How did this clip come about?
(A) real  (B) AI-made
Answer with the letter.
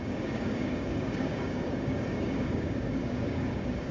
B